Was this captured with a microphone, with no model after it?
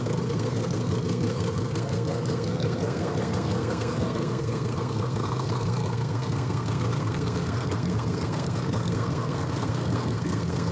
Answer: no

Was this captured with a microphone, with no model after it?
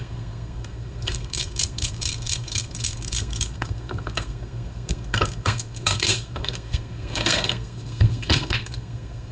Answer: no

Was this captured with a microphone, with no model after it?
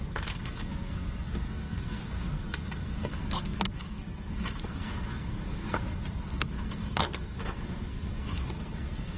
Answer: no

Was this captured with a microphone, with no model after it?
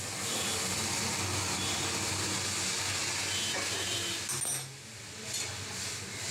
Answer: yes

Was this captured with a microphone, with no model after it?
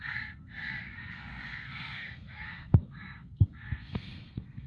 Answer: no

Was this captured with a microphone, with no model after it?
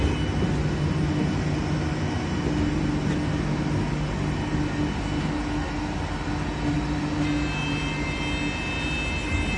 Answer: yes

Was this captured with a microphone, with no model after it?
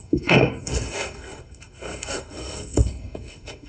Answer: no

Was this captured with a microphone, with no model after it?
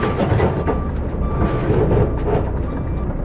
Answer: yes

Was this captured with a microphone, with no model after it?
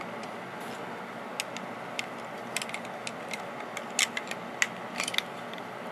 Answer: yes